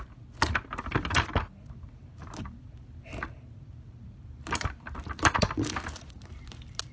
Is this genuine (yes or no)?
yes